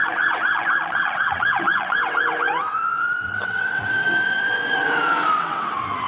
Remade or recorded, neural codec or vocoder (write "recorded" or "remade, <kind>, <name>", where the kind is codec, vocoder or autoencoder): remade, vocoder, WaveNeXt